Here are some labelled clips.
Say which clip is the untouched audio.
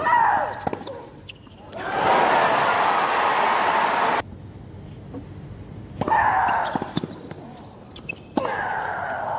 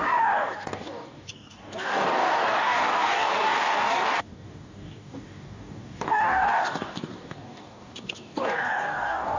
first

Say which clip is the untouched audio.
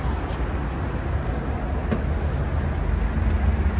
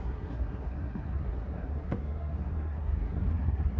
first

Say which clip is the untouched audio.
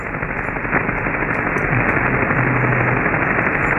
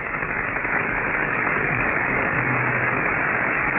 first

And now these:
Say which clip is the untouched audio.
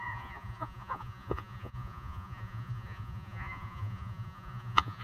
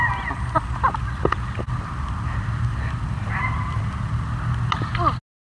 second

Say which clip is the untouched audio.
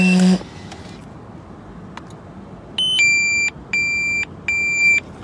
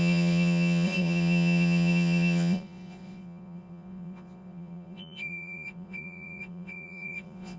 first